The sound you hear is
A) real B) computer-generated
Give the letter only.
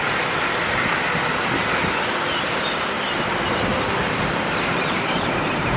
A